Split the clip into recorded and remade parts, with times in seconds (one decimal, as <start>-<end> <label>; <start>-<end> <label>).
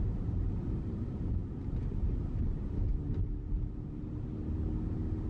0.0-5.3 recorded